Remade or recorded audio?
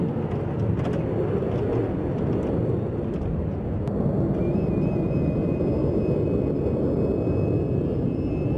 recorded